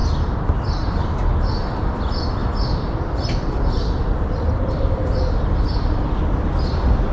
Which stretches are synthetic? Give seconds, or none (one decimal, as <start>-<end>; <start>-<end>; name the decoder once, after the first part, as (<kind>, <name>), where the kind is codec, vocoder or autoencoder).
0.0-1.7 (vocoder, BigVGAN v2); 2.4-5.6